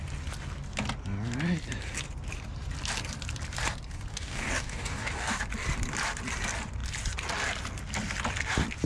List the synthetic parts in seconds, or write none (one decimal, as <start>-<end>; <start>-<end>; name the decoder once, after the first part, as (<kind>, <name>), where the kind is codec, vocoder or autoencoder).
4.1-5.4 (codec, DAC)